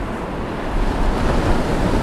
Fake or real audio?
real